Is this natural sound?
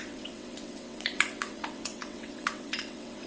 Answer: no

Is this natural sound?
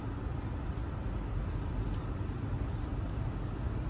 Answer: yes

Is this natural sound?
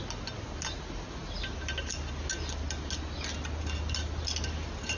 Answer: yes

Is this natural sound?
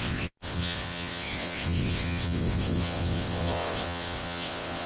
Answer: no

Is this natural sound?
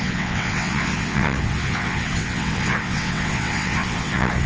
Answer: no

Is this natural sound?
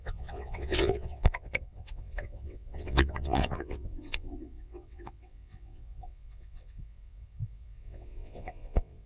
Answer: no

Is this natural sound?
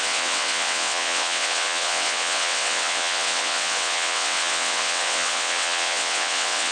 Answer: no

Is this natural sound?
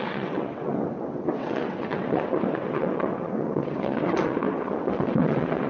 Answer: no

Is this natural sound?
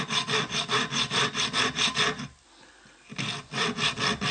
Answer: yes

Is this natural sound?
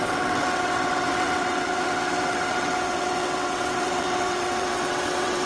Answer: no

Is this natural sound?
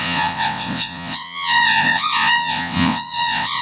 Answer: no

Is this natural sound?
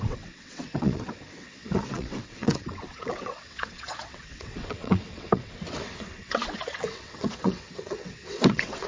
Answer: no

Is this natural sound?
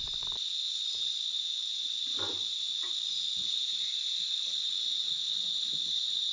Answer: yes